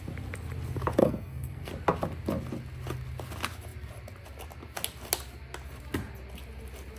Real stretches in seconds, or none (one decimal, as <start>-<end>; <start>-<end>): 0.0-1.0; 1.7-7.0